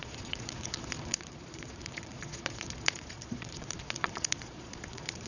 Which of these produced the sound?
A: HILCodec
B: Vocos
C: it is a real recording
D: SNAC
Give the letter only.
B